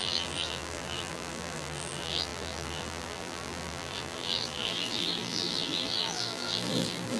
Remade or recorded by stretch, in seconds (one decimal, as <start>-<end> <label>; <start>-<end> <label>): 0.0-7.2 remade